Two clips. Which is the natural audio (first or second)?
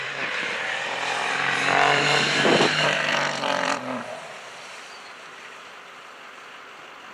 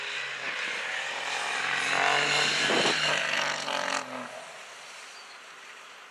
second